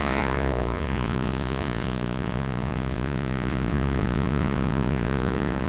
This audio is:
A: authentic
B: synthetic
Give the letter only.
B